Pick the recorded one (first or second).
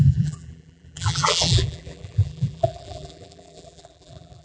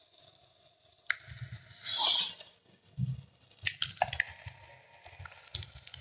second